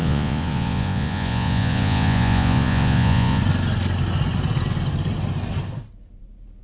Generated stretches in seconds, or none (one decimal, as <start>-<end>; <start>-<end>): 0.0-3.4